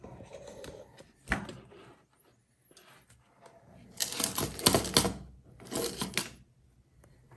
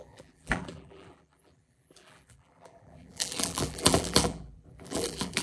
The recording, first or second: first